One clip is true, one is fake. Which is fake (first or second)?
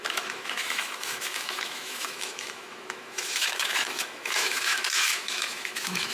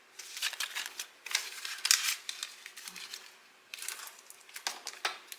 first